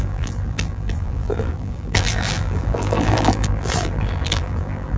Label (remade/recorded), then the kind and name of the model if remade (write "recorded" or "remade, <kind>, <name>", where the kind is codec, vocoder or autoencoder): remade, vocoder, BigVGAN v2